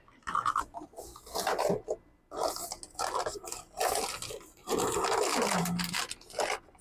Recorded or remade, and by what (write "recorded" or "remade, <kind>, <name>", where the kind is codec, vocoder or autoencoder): recorded